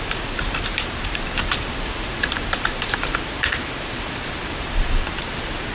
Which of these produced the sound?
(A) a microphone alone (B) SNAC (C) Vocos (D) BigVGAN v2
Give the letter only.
D